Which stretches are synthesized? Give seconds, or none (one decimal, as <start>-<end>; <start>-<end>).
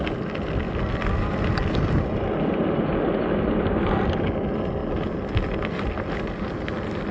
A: none